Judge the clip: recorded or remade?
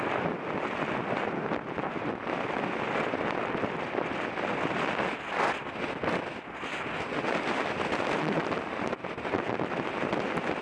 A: recorded